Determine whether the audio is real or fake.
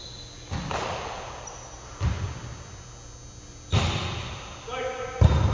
real